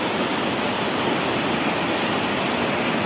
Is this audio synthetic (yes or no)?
no